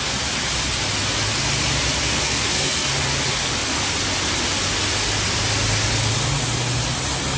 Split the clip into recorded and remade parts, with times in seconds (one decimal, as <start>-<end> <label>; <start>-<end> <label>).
0.0-2.1 recorded; 2.1-2.9 remade; 2.9-7.4 recorded